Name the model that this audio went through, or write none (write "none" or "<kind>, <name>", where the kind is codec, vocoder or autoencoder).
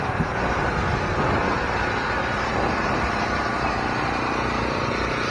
none